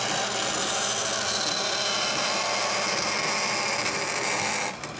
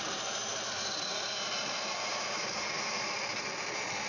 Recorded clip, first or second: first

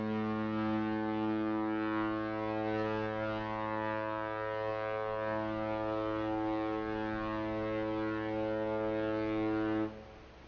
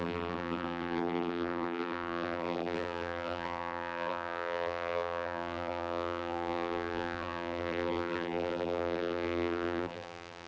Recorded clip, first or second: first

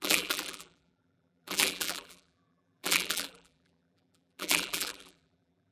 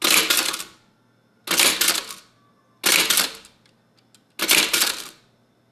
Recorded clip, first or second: second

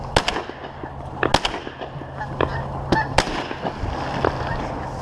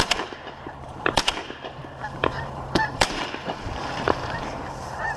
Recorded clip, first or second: first